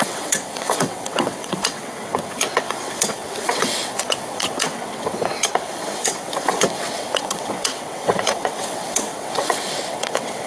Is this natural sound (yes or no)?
no